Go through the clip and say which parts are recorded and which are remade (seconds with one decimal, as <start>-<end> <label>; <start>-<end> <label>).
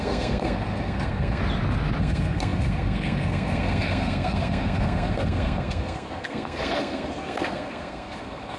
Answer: 0.0-1.4 remade; 1.4-2.0 recorded; 2.0-8.6 remade